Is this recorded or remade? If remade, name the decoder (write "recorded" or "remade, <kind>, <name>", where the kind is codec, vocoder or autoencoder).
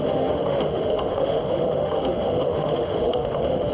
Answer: remade, autoencoder, DAC-VAE